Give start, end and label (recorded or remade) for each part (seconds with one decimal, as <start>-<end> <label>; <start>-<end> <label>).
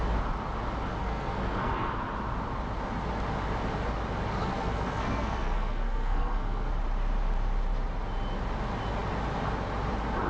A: 0.0-1.0 recorded; 1.0-1.9 remade; 1.9-4.4 recorded; 4.4-6.7 remade; 6.7-10.3 recorded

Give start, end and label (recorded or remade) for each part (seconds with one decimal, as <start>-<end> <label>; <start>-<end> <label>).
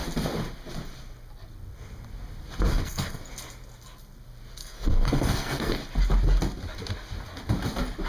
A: 0.0-2.7 recorded; 2.7-3.2 remade; 3.2-4.6 recorded; 4.6-5.7 remade; 5.7-8.1 recorded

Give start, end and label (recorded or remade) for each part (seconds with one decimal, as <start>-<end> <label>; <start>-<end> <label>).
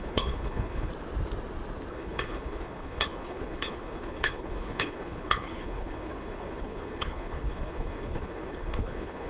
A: 0.0-0.9 remade; 0.9-1.9 recorded; 1.9-9.3 remade